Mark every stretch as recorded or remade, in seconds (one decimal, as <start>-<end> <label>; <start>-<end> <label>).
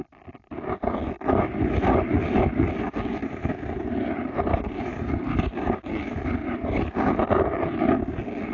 0.0-3.2 recorded; 3.2-5.9 remade; 5.9-6.4 recorded; 6.4-7.5 remade; 7.5-8.5 recorded